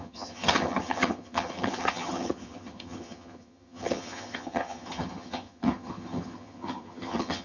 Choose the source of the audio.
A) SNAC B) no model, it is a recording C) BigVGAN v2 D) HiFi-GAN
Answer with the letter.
D